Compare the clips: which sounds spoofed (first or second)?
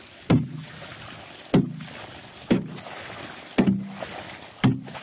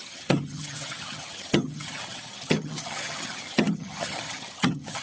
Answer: second